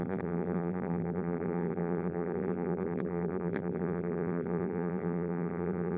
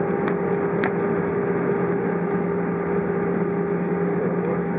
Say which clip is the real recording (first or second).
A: second